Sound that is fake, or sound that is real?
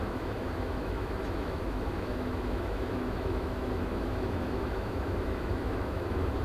fake